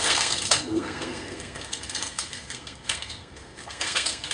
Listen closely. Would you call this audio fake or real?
fake